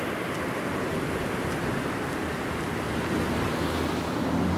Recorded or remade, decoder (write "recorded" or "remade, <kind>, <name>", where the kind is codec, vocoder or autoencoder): recorded